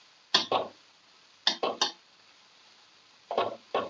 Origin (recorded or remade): recorded